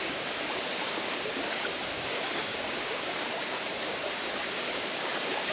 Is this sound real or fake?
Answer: fake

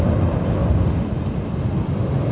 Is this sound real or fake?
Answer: real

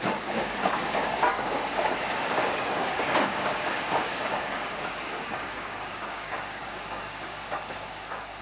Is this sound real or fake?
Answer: fake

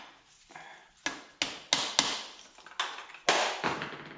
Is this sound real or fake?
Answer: real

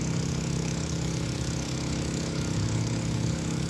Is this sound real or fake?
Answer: fake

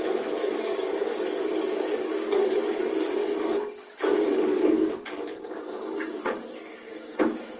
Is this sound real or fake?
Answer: fake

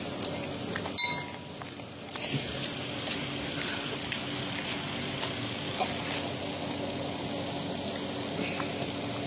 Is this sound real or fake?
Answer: real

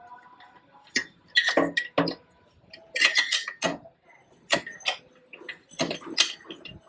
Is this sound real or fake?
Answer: real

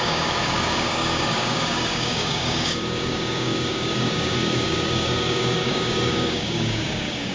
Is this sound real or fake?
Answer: fake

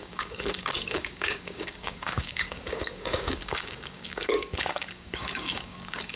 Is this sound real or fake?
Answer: fake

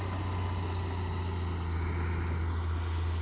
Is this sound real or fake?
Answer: real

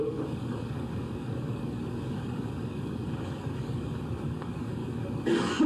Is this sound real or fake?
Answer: fake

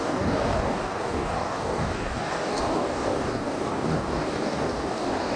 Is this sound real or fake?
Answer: fake